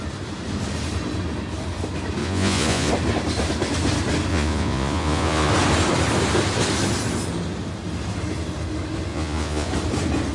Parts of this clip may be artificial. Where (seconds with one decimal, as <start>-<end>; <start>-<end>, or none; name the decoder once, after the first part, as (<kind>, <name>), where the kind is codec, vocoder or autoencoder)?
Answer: 2.2-2.9 (vocoder, Vocos); 4.3-5.5; 9.1-9.7